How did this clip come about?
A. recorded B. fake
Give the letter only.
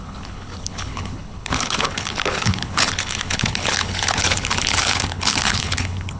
B